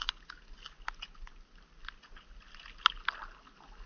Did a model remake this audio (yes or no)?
no